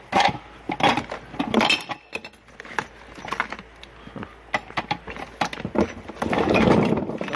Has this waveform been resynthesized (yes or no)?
no